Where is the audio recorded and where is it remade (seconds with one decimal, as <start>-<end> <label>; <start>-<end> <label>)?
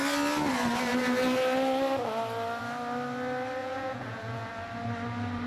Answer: 0.0-3.6 recorded; 3.6-4.5 remade; 4.5-5.5 recorded